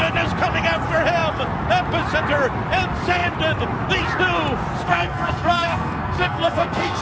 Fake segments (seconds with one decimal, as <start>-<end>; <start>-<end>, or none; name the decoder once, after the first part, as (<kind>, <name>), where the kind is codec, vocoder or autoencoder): 4.9-7.0 (codec, SNAC)